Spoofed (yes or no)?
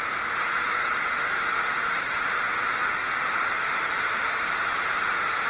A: yes